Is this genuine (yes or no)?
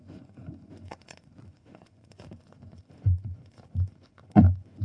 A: no